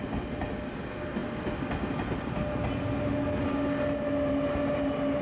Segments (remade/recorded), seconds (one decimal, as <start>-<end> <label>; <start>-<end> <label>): 0.0-5.2 recorded